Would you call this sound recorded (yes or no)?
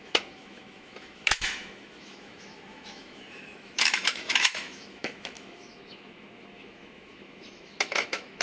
no